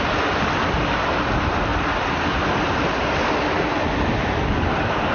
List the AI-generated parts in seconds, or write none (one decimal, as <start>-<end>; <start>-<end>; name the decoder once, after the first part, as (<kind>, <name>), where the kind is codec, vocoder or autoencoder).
none